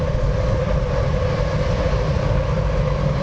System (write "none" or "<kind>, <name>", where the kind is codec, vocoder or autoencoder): none